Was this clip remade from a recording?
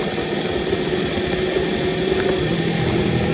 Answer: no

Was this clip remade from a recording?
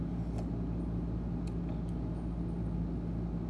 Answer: no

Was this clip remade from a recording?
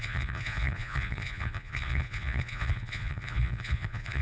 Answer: yes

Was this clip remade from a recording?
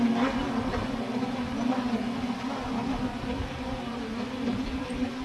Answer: no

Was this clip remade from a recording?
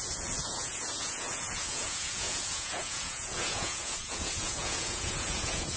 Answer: yes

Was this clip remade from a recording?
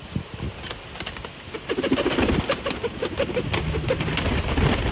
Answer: no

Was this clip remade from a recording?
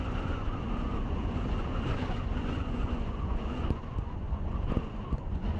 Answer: yes